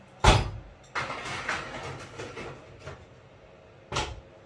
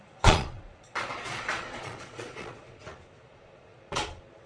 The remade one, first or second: second